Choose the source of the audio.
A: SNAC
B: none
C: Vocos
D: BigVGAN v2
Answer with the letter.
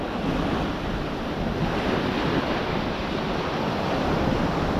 D